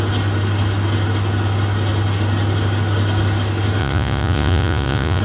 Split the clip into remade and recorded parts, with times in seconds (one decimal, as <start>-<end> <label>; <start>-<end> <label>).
0.0-3.8 recorded; 3.8-5.2 remade